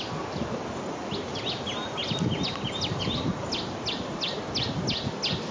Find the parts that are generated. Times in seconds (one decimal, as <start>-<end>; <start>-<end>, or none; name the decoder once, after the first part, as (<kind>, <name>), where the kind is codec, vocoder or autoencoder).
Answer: none